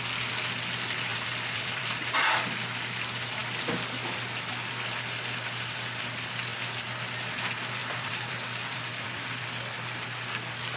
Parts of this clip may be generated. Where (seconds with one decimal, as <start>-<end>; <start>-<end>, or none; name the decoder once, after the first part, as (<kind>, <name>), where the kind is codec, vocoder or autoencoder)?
1.1-1.9 (vocoder, BigVGAN v2); 7.8-9.4